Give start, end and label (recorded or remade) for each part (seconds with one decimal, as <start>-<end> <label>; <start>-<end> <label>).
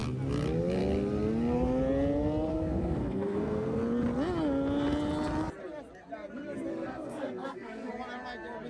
0.0-2.5 recorded; 2.5-3.8 remade; 3.8-6.7 recorded; 6.7-7.9 remade; 7.9-8.7 recorded